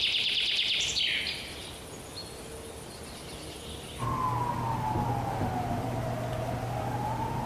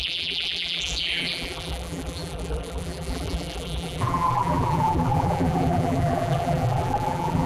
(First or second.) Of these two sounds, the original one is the first